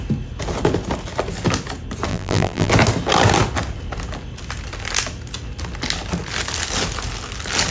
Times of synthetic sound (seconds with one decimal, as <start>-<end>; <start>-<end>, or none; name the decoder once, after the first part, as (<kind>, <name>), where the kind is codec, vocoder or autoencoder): 2.1-2.7 (vocoder, BigVGAN v2)